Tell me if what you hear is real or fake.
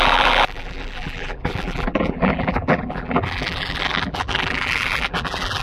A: fake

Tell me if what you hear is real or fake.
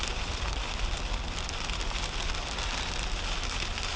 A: real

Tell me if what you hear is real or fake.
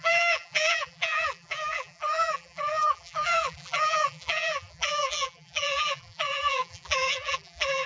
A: fake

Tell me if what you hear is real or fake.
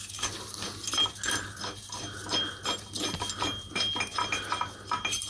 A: real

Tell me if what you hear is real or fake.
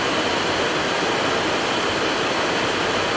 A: real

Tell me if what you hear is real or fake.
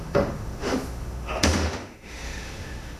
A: fake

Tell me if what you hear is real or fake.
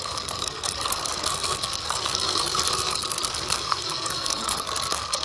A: fake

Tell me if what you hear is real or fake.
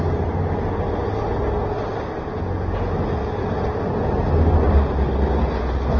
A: real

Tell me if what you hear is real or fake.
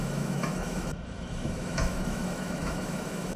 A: fake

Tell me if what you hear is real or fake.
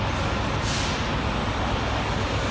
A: real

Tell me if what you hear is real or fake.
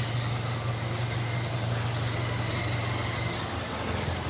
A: real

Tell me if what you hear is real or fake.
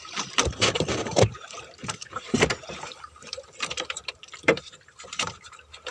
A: fake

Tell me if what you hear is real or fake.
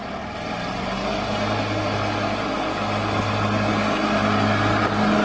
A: real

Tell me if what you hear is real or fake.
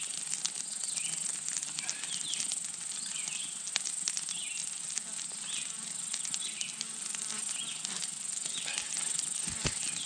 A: real